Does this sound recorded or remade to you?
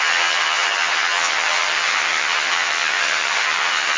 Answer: remade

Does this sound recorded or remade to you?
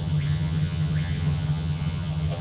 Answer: remade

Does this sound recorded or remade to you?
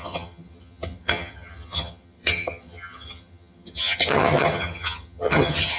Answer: remade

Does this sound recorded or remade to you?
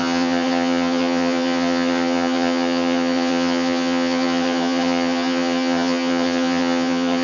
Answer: remade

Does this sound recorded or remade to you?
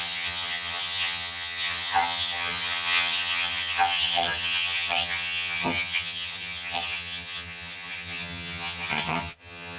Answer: remade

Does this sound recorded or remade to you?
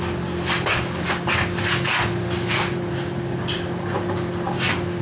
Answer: recorded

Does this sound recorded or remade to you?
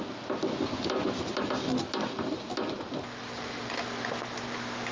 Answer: recorded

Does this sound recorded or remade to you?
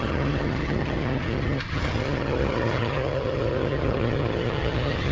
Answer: remade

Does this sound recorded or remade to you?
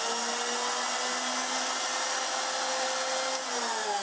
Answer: recorded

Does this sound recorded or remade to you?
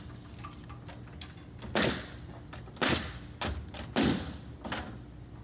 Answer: recorded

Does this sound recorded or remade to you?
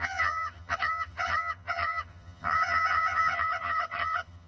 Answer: remade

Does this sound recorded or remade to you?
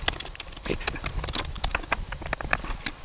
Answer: recorded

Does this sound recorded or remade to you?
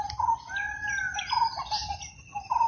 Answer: recorded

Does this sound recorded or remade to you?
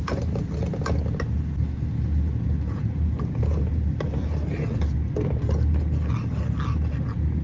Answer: recorded